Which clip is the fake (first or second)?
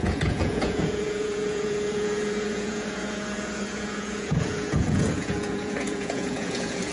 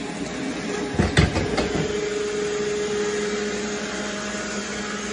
first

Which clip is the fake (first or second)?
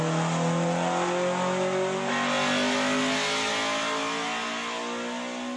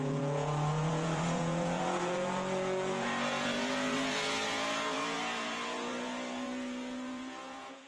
second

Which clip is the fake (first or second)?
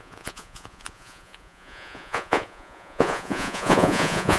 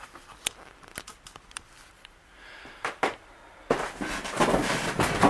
first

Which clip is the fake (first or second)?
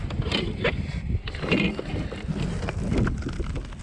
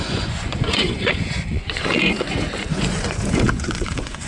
second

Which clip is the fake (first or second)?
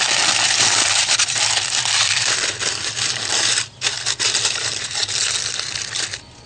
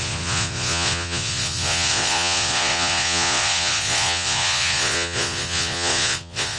second